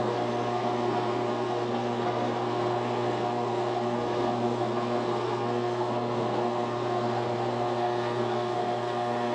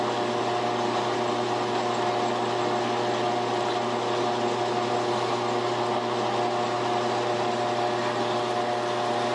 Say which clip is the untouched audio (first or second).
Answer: second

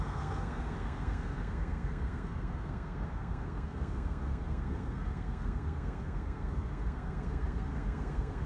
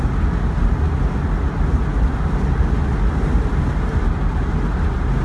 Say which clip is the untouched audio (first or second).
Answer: second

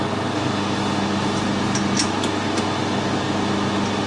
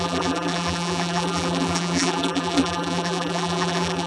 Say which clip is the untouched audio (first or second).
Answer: first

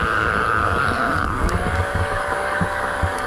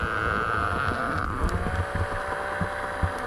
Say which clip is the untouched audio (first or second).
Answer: second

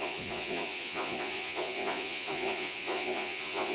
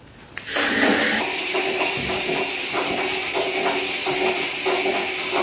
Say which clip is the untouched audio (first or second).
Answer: second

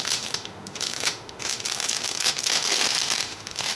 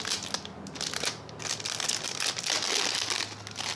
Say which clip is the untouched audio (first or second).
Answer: second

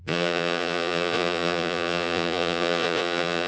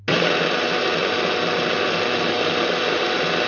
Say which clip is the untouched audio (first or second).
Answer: second